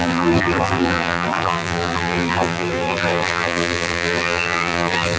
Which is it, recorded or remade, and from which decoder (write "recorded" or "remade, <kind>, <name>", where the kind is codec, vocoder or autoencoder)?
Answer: remade, vocoder, BigVGAN v2